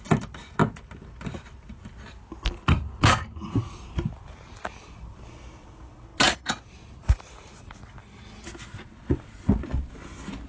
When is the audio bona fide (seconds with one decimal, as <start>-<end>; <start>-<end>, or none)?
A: 0.0-8.7; 9.9-10.5